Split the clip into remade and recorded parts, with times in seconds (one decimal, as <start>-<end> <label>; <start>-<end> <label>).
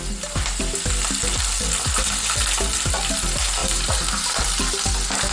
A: 0.0-3.6 recorded; 3.6-4.4 remade; 4.4-5.3 recorded